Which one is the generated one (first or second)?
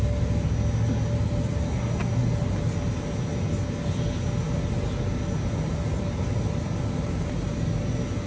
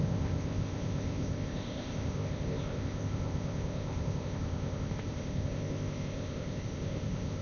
second